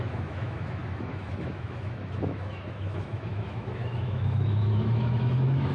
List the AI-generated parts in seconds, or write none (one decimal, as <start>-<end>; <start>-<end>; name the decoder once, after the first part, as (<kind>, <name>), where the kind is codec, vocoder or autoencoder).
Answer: 0.0-5.7 (autoencoder, DAC-VAE)